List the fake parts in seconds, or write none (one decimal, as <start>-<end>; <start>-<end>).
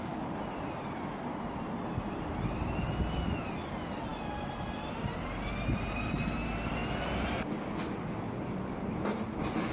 none